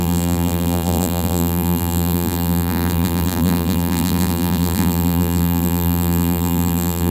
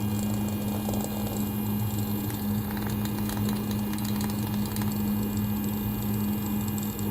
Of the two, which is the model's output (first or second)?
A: first